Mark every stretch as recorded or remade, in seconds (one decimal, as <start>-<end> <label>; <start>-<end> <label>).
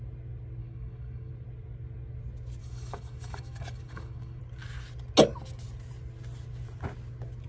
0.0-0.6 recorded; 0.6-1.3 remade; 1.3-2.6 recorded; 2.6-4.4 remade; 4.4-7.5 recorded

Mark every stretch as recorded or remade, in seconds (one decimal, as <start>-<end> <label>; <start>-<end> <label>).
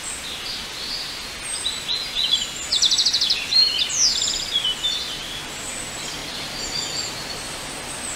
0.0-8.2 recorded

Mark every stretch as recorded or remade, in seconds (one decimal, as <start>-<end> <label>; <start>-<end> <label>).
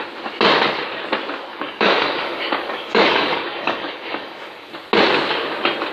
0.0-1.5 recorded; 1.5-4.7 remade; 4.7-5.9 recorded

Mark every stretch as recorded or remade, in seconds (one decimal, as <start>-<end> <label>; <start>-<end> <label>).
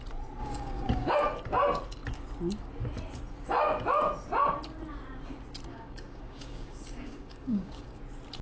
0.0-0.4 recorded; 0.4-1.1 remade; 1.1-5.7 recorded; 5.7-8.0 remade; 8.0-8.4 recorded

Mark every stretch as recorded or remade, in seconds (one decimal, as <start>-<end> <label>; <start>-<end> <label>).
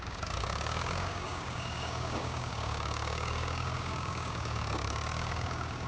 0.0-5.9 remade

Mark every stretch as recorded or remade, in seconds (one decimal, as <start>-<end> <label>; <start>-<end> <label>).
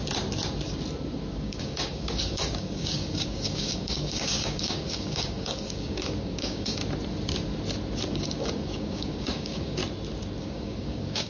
0.0-1.3 recorded; 1.3-6.8 remade; 6.8-8.1 recorded; 8.1-9.8 remade; 9.8-10.4 recorded; 10.4-11.3 remade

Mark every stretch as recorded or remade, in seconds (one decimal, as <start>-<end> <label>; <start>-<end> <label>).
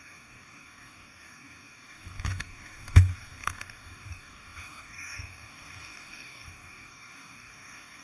0.0-8.0 remade